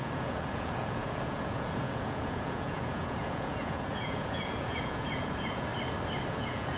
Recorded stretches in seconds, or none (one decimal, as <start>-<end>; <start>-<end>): 5.7-6.3